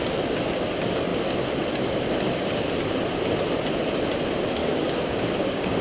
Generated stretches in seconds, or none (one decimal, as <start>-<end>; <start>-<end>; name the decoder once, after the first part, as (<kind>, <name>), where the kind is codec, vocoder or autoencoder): 4.6-5.8 (codec, DAC)